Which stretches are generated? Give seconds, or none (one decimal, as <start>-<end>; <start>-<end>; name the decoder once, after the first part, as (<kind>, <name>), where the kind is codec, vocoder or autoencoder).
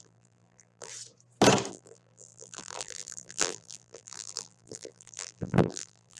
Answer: 0.0-0.9 (vocoder, BigVGAN v2); 1.7-6.2